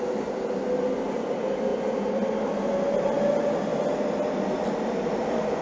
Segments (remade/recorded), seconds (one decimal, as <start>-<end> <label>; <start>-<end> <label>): 0.0-5.6 recorded